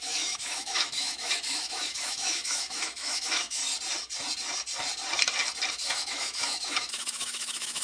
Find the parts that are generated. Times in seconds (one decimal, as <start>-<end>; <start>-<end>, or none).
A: 0.0-3.6; 5.7-7.8